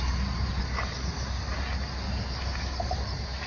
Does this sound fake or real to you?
real